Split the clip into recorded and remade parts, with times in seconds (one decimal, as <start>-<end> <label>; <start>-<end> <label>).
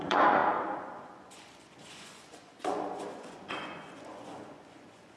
0.0-5.2 remade